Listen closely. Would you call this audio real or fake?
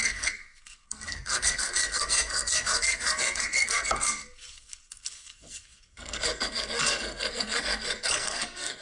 fake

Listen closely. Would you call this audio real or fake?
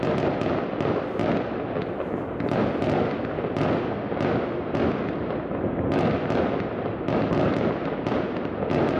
real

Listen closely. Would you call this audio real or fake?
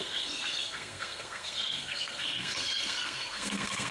fake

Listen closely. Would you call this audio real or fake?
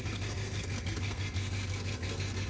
fake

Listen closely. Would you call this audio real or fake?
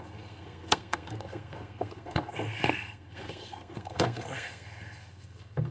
fake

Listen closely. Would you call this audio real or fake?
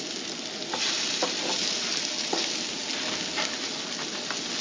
real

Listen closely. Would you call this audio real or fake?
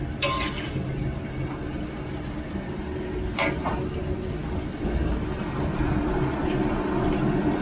real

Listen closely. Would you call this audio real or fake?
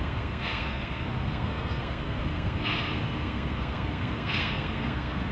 fake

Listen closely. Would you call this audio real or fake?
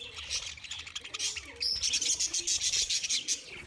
real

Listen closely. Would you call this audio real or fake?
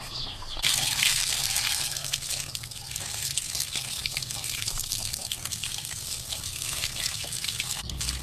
fake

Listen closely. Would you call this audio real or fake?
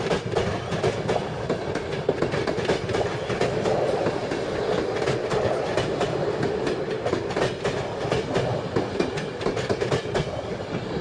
real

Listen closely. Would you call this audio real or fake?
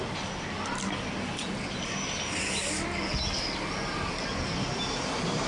real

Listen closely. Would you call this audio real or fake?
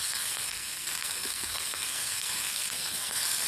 fake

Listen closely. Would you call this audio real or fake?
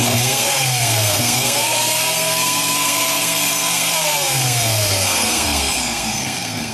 fake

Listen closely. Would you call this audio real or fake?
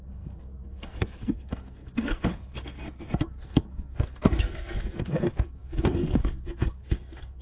fake